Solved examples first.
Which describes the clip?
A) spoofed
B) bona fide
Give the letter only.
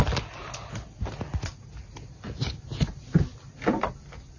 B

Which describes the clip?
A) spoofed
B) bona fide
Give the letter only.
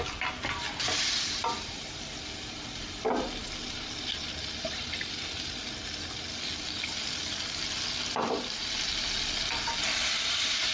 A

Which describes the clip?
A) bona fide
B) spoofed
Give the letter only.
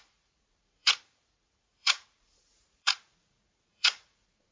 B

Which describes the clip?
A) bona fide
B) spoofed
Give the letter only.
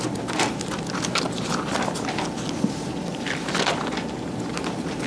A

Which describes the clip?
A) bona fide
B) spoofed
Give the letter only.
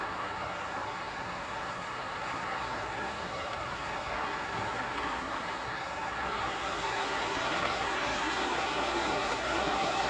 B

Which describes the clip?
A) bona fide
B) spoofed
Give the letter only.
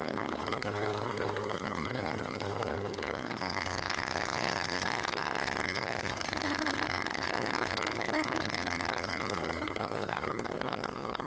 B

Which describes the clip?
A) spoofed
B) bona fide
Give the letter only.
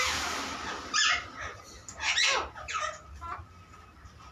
B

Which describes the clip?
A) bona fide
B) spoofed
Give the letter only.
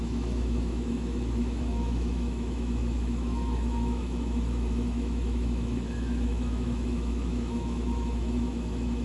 B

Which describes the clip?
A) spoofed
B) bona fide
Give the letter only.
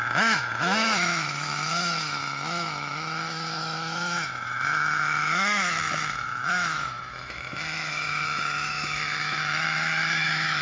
A